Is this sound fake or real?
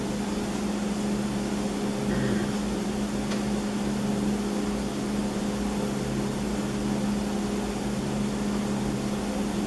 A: real